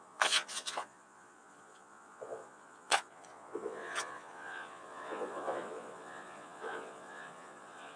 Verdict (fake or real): fake